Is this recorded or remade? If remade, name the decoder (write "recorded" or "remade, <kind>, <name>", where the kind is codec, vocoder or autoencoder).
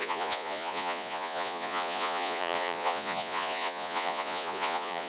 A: remade, vocoder, Vocos